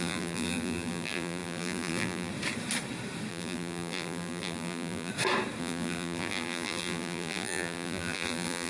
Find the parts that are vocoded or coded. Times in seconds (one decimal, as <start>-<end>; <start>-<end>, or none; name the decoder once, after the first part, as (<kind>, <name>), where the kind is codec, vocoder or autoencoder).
0.0-2.3 (vocoder, BigVGAN v2); 3.3-5.1; 5.6-8.7